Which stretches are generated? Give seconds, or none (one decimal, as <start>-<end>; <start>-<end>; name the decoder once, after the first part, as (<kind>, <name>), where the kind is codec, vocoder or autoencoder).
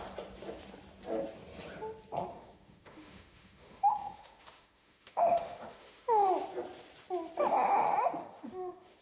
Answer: 2.3-6.3 (autoencoder, DAC-VAE); 8.2-9.0